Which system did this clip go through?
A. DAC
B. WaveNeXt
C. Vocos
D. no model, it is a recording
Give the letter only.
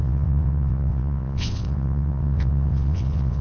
B